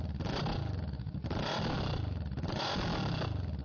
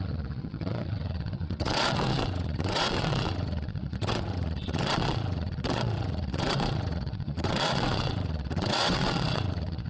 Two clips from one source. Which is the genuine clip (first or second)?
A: first